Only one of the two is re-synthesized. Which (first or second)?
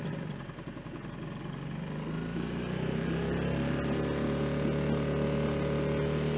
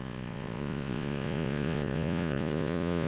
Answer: second